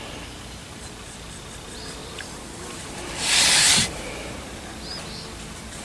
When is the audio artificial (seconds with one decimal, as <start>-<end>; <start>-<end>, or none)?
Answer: 0.6-1.5; 2.0-4.8